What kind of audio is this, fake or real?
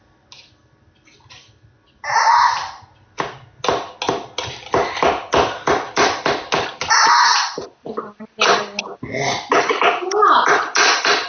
real